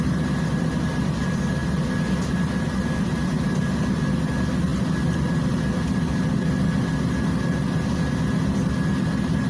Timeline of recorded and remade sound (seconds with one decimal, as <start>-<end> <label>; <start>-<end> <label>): 0.0-9.5 recorded